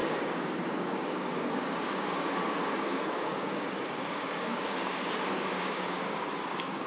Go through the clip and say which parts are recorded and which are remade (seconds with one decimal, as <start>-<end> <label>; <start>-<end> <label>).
0.0-6.9 remade